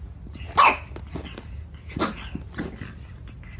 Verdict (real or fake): real